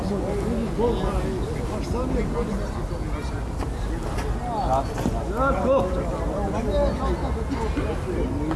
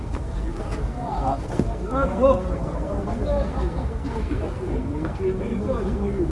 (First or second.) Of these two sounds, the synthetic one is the second